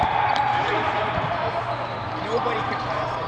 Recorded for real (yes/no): no